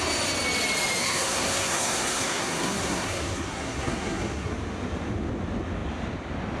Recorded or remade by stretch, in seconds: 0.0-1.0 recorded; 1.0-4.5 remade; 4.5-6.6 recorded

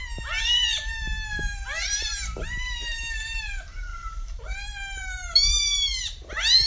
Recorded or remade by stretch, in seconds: 0.0-1.3 recorded; 1.3-3.4 remade; 3.4-3.9 recorded; 3.9-6.3 remade; 6.3-6.7 recorded

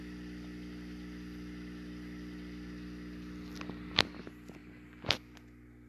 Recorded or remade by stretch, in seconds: 0.0-5.9 recorded